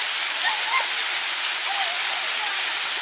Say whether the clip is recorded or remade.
recorded